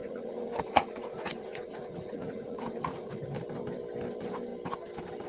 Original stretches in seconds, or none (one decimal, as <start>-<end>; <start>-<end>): 3.2-5.3